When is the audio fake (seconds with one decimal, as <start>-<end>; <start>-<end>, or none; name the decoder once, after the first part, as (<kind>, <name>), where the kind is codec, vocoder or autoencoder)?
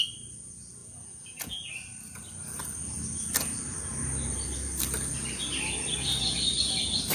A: 0.8-1.7 (vocoder, Vocos)